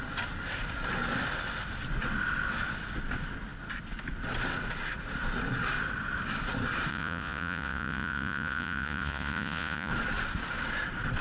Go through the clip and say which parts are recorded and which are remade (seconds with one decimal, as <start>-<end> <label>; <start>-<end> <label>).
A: 0.0-6.9 recorded; 6.9-9.9 remade; 9.9-11.2 recorded